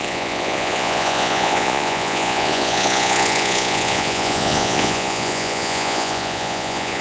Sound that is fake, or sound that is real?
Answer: fake